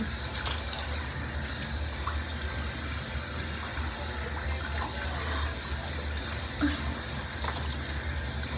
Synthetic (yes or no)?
no